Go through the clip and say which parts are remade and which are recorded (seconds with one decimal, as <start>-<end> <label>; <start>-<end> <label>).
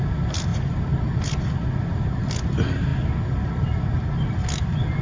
0.0-5.0 recorded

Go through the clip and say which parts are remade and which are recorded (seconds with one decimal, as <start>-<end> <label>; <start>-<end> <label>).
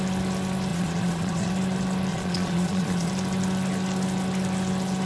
0.0-0.7 recorded; 0.7-1.5 remade; 1.5-2.1 recorded; 2.1-3.1 remade; 3.1-5.1 recorded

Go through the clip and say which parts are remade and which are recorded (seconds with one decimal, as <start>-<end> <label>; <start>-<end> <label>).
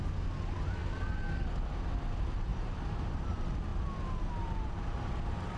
0.0-2.5 recorded; 2.5-3.3 remade; 3.3-5.6 recorded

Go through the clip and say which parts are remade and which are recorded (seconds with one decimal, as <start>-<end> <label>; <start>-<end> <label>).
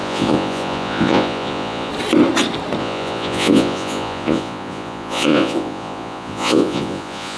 0.0-1.9 remade; 1.9-2.8 recorded; 2.8-7.4 remade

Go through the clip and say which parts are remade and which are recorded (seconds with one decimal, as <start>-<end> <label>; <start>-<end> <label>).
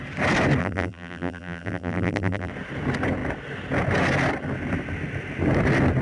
0.0-0.6 recorded; 0.6-2.5 remade; 2.5-6.0 recorded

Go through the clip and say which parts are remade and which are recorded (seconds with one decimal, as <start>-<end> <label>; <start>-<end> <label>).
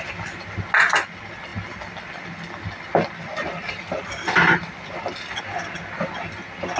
0.0-6.8 recorded